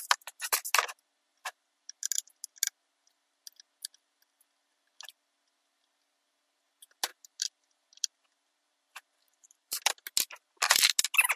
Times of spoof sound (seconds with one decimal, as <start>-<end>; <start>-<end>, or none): 1.4-2.0; 7.1-9.8